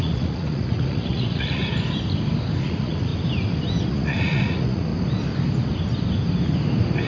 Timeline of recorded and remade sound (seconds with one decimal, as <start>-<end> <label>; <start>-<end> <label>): 0.0-1.6 remade; 1.6-2.6 recorded; 2.6-3.1 remade; 3.1-3.9 recorded; 3.9-4.9 remade; 4.9-7.1 recorded